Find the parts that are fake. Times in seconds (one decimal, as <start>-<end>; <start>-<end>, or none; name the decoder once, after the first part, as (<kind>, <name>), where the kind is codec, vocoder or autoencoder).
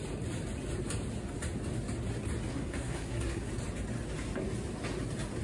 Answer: 2.5-3.5 (codec, SNAC)